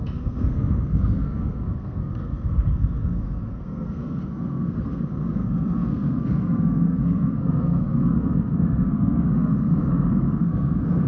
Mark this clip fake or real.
fake